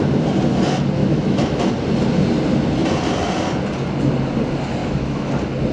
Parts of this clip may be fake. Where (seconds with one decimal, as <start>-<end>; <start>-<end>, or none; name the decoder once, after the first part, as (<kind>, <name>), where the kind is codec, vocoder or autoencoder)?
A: 1.0-1.7 (autoencoder, DAC-VAE); 4.8-5.3